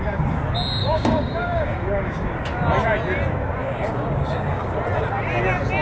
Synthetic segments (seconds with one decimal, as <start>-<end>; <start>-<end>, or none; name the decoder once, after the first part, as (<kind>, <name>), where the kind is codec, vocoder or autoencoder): 0.8-2.3 (codec, DAC); 3.6-4.7